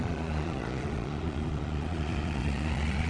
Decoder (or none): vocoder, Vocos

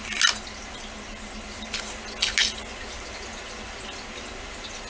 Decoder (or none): none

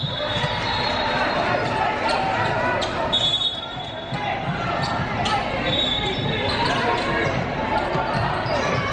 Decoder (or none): none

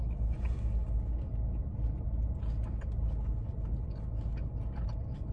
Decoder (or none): none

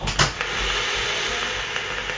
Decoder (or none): none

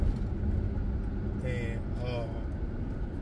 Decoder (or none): none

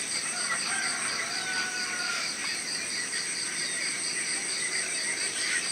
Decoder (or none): vocoder, BigVGAN v2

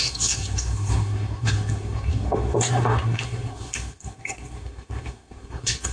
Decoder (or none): codec, SNAC